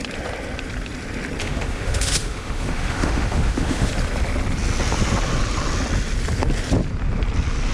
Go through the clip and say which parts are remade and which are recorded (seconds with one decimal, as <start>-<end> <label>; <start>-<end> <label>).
0.0-1.4 recorded; 1.4-3.9 remade; 3.9-7.7 recorded